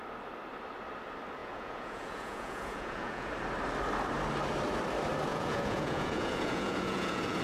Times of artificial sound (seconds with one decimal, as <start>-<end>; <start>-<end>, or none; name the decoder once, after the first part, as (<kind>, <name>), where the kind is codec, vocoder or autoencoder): 1.4-3.3 (vocoder, Vocos); 5.3-7.4